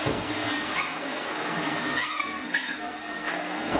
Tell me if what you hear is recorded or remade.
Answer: remade